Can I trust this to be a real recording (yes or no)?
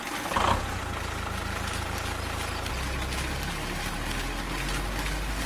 yes